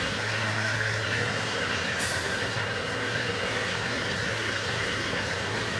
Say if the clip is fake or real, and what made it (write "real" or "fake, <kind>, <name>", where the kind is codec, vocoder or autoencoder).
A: fake, codec, SNAC